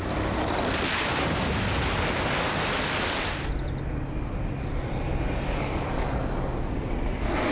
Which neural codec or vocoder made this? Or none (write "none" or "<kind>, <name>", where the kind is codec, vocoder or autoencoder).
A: none